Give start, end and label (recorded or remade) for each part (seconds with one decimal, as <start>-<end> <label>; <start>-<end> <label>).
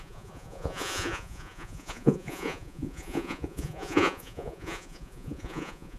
0.0-6.0 remade